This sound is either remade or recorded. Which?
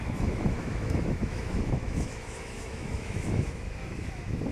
remade